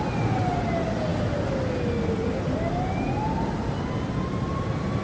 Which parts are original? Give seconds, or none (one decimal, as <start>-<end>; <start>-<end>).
0.0-5.0